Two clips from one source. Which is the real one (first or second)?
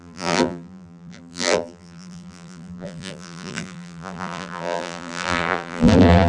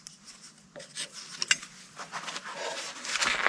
second